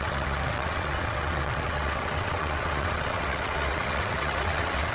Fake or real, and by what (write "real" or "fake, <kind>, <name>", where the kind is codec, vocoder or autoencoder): fake, vocoder, WaveNeXt